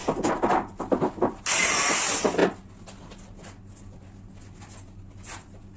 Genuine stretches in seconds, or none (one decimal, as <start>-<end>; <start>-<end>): 0.0-5.8